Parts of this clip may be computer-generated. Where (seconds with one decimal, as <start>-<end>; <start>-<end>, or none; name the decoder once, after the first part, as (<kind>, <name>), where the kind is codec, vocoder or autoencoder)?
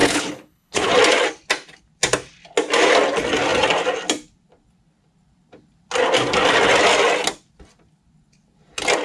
0.0-0.9 (codec, HILCodec)